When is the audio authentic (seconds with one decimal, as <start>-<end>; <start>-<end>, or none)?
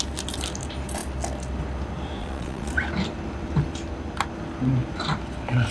0.0-2.2; 2.7-5.7